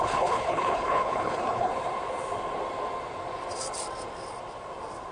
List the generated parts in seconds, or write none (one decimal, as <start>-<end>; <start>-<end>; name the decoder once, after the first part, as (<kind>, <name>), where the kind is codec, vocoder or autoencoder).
0.0-1.7 (codec, HILCodec)